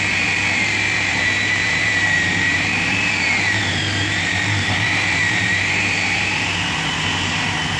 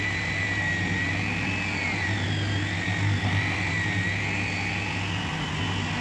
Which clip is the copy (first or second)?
first